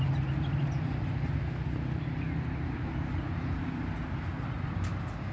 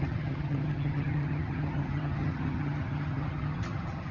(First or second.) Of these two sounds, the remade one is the second